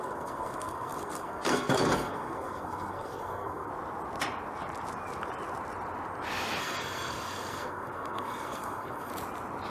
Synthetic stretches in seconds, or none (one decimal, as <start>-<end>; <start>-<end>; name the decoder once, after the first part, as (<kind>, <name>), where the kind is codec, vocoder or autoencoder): 0.0-3.7 (codec, SNAC); 6.6-9.1